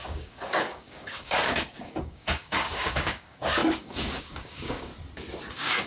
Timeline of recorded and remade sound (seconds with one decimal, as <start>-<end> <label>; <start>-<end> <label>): 0.0-4.9 remade; 4.9-5.5 recorded; 5.5-5.9 remade